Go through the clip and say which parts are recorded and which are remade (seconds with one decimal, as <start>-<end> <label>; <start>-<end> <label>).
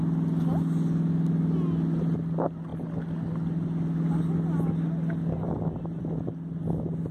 0.0-7.1 recorded